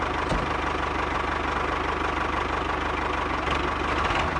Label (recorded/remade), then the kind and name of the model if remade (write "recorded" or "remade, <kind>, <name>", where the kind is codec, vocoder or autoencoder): recorded